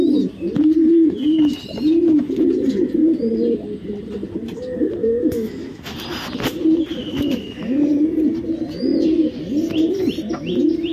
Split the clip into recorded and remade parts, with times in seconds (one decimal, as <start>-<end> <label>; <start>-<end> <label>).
0.0-5.0 recorded; 5.0-6.0 remade; 6.0-7.0 recorded; 7.0-7.9 remade; 7.9-10.9 recorded